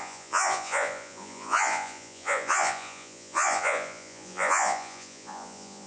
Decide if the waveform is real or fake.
fake